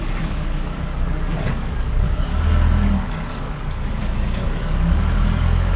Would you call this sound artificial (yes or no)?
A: yes